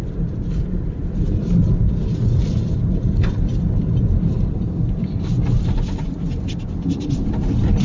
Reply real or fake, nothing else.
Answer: fake